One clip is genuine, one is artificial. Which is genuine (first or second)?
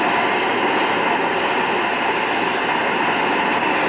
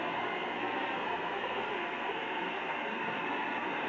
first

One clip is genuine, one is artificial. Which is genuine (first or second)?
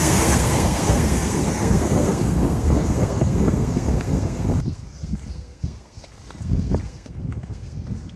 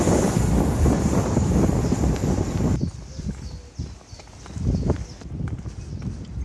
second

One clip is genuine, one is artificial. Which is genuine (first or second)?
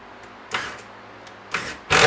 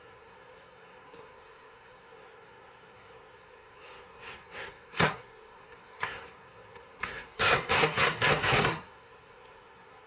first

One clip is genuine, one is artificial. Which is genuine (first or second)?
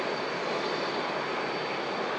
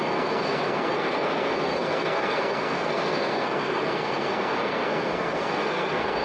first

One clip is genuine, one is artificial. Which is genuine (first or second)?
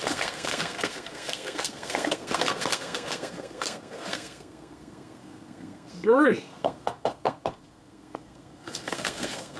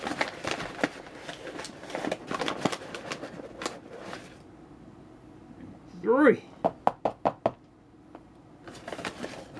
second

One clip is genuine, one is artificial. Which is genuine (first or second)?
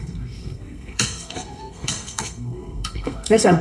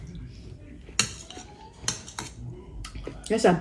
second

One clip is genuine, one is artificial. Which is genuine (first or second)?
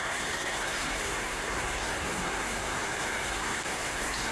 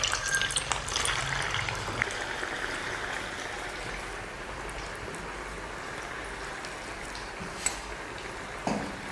second